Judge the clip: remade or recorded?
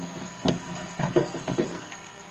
remade